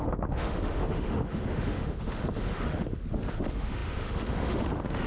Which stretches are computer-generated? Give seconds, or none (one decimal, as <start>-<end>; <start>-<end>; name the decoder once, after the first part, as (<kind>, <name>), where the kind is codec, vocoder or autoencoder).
0.0-5.1 (autoencoder, DAC-VAE)